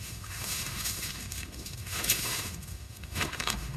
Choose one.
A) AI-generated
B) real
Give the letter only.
A